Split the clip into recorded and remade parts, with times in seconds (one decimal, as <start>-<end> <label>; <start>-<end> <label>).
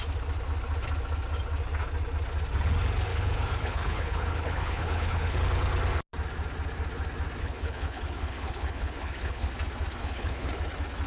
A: 0.0-3.1 recorded; 3.1-5.4 remade; 5.4-7.4 recorded; 7.4-9.5 remade; 9.5-10.0 recorded; 10.0-10.6 remade; 10.6-11.1 recorded